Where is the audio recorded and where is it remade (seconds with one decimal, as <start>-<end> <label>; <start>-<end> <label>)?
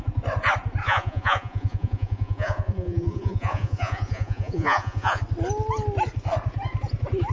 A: 0.0-0.8 recorded; 0.8-5.2 remade; 5.2-7.3 recorded